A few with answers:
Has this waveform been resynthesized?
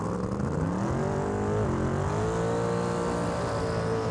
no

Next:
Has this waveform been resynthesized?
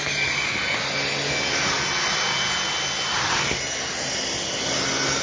no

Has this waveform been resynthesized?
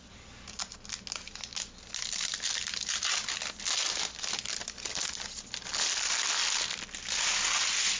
no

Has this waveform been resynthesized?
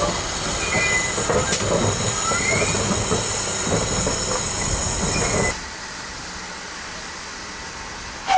no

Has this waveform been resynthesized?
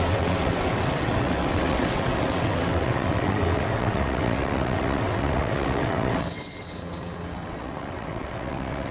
yes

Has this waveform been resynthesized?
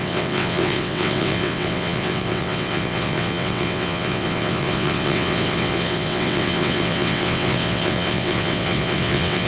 yes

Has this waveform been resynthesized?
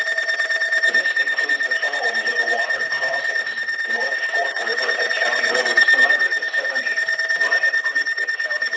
yes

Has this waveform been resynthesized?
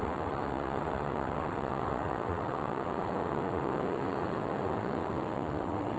yes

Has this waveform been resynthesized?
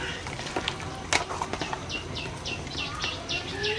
no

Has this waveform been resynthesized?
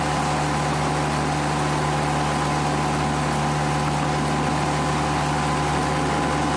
no